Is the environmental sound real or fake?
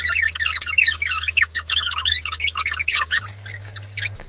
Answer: fake